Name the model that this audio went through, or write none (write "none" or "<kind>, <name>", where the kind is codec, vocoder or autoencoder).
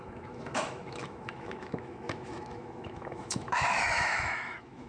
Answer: autoencoder, DAC-VAE